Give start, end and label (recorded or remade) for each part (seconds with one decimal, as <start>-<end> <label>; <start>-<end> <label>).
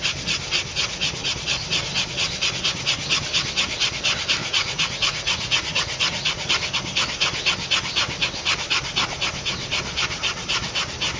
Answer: 0.0-4.4 recorded; 4.4-6.5 remade; 6.5-11.2 recorded